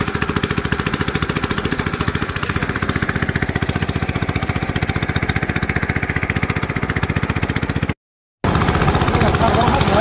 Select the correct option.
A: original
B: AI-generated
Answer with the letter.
A